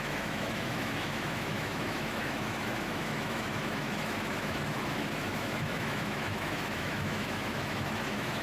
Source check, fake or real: fake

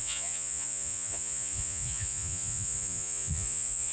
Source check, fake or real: fake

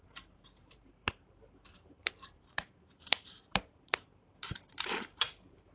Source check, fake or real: fake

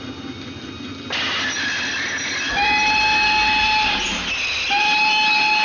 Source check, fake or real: real